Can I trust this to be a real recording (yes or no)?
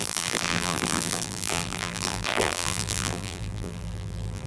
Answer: no